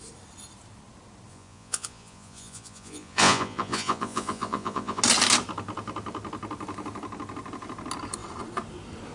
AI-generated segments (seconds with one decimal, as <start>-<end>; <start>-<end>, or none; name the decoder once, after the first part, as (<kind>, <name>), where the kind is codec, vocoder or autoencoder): 1.3-5.0 (vocoder, Vocos)